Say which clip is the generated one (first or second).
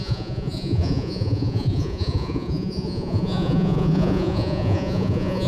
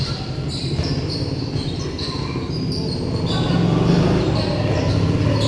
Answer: first